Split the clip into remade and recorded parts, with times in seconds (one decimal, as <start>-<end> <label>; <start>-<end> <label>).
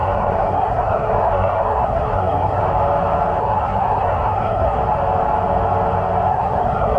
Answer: 0.0-2.6 remade; 2.6-3.4 recorded; 3.4-4.8 remade; 4.8-6.3 recorded; 6.3-7.0 remade